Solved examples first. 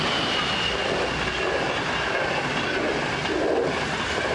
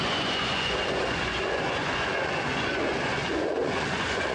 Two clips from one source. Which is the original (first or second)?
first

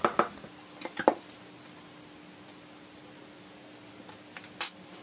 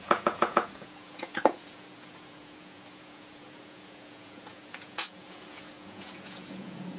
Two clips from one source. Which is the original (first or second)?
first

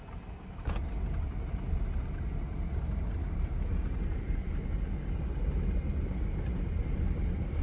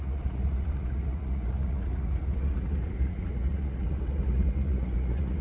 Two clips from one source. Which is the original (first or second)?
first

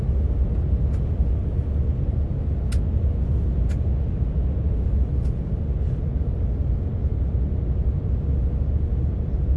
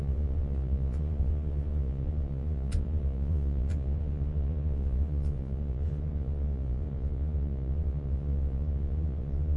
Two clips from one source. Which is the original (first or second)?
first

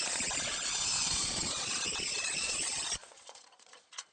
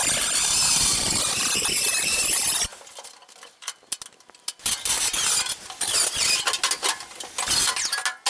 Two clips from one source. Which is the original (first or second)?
second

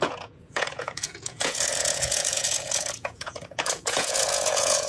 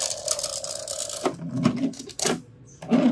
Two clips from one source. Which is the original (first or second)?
second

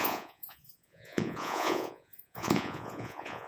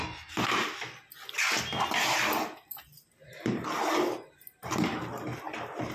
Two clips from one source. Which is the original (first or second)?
second